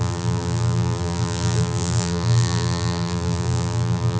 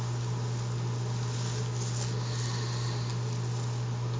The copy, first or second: first